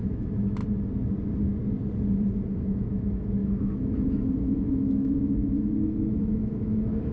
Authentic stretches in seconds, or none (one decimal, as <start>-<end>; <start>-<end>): 0.6-2.5